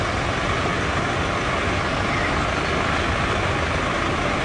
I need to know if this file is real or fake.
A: real